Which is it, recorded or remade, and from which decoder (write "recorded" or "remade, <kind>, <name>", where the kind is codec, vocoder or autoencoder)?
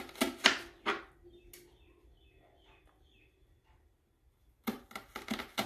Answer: recorded